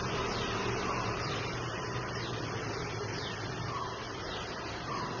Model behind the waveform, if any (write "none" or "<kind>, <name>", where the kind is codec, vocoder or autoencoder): vocoder, BigVGAN v2